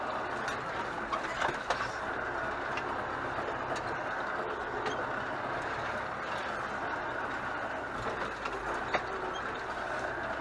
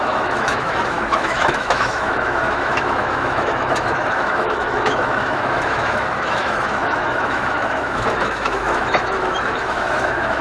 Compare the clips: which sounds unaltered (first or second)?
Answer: first